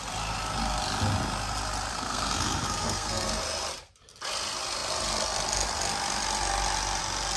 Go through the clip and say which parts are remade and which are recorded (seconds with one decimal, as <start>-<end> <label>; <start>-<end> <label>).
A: 0.0-1.9 recorded; 1.9-3.3 remade; 3.3-7.4 recorded